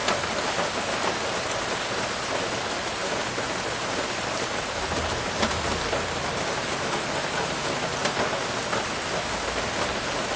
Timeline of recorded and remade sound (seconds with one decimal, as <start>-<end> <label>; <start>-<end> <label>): 0.0-10.4 recorded